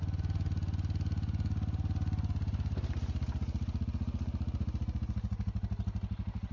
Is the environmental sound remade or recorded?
recorded